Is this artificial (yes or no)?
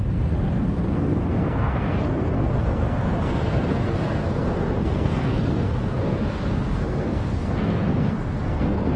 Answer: yes